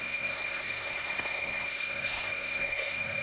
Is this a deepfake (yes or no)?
yes